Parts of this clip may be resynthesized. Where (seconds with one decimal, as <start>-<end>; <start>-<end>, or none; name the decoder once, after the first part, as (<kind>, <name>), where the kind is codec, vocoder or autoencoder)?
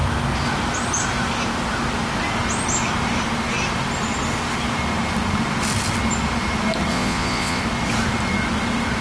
6.9-7.6 (vocoder, Vocos)